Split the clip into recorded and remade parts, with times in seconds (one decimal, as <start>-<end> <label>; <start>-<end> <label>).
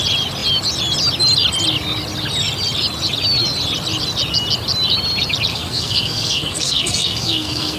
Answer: 0.0-5.5 recorded; 5.5-7.8 remade